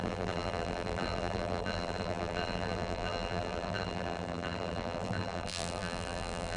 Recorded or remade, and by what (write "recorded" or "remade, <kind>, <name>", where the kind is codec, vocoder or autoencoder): remade, vocoder, BigVGAN v2